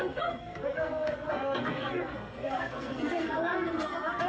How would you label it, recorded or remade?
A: remade